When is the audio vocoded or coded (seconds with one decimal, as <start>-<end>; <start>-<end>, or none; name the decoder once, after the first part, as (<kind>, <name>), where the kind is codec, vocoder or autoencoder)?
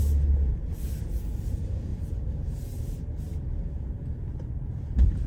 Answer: 0.0-0.5 (vocoder, BigVGAN v2); 1.0-5.3